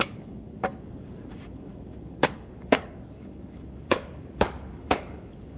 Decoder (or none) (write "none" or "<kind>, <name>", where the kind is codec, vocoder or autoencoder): codec, DAC